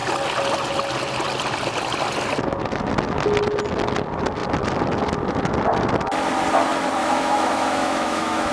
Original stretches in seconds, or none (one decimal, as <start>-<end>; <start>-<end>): 0.0-7.0